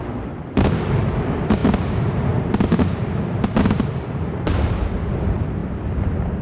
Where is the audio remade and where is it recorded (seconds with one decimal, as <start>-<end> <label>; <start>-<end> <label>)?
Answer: 0.0-1.6 remade; 1.6-4.1 recorded; 4.1-5.6 remade; 5.6-6.4 recorded